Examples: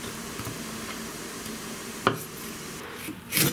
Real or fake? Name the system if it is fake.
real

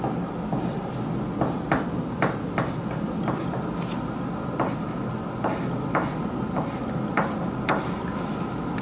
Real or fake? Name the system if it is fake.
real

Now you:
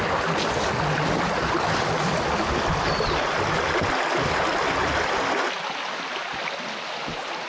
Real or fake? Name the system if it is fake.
real